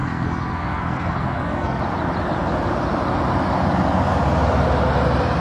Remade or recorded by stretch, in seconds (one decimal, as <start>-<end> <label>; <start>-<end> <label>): 0.0-1.8 remade; 1.8-5.4 recorded